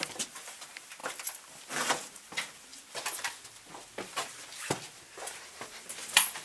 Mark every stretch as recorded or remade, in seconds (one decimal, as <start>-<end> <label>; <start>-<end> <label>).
0.0-6.4 recorded